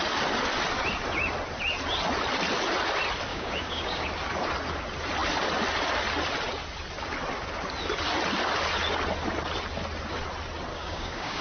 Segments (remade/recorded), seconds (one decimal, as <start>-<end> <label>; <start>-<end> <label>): 0.0-3.3 recorded; 3.3-4.0 remade; 4.0-10.7 recorded; 10.7-11.4 remade